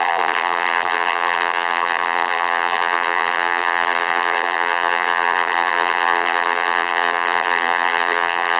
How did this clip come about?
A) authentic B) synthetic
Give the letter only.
B